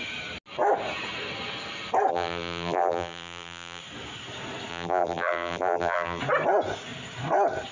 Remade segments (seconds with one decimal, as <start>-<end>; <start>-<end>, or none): 2.1-3.8; 4.7-6.2

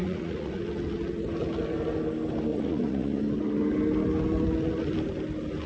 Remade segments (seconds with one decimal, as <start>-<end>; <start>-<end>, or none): 0.0-0.6; 2.5-3.2

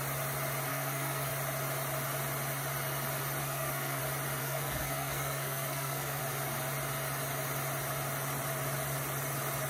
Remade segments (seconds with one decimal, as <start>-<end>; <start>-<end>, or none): 0.7-1.3; 3.4-4.0; 4.4-6.2

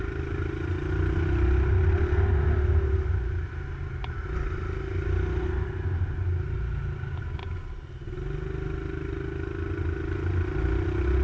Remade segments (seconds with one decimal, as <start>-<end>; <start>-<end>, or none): none

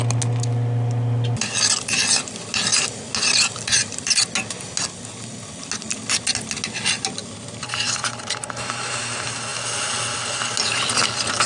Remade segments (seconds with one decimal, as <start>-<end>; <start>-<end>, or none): 7.2-8.9

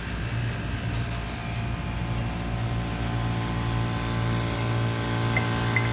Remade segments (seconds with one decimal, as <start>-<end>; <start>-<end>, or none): none

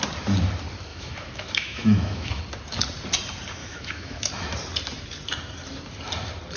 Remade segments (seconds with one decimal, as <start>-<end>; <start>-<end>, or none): 0.9-2.4; 3.6-4.3